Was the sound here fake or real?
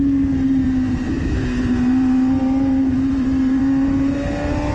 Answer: fake